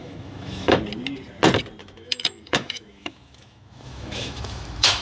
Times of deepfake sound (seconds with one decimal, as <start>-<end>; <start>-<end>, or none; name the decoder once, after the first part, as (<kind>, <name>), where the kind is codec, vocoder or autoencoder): 0.0-0.8 (autoencoder, DAC-VAE); 1.8-5.0